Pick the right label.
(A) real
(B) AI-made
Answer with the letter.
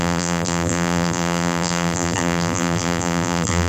B